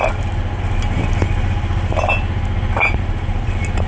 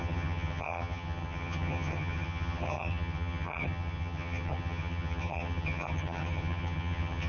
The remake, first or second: second